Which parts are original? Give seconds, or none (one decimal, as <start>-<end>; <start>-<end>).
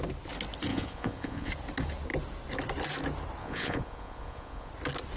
0.0-0.7; 1.5-3.4; 4.7-5.2